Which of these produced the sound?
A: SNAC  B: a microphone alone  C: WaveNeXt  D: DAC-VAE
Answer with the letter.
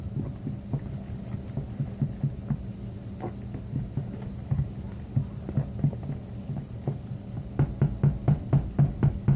B